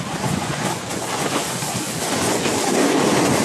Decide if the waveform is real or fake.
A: fake